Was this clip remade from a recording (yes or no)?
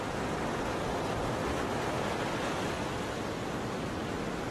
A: no